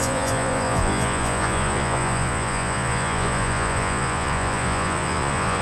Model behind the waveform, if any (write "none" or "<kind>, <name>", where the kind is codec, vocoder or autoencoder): vocoder, Vocos